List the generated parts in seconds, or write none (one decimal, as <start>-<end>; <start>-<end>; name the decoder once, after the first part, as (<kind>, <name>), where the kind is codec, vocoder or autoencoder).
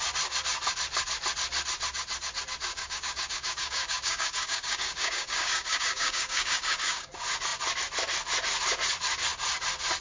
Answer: 2.7-7.1 (codec, DAC)